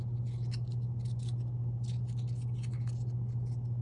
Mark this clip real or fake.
real